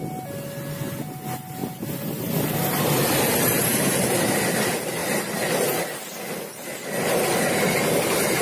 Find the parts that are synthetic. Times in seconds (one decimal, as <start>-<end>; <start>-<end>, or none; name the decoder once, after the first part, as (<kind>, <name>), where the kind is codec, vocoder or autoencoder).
none